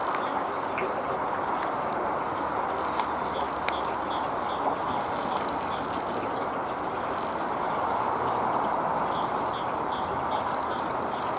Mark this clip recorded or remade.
recorded